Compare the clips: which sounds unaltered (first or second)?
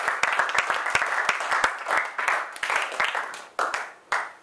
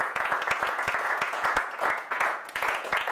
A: first